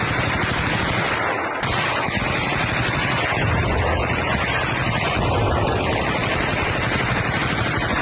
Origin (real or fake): real